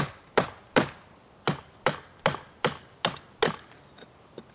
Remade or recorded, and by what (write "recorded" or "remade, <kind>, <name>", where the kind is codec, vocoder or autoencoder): recorded